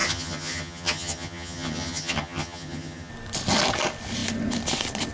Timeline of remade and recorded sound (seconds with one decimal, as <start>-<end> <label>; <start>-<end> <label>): 0.0-3.1 remade; 3.1-5.1 recorded